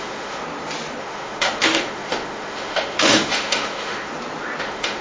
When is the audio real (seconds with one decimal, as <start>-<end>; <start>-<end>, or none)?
0.4-1.0; 4.1-4.6